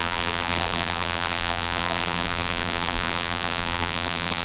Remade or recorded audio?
remade